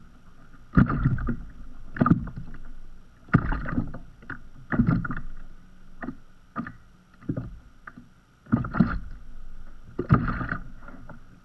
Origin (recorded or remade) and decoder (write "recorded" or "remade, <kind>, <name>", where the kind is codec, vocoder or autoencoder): recorded